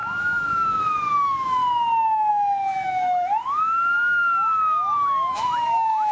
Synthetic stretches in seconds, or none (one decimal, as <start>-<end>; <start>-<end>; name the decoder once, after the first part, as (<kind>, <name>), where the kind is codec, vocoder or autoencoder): 0.0-1.6 (autoencoder, DAC-VAE); 2.3-6.1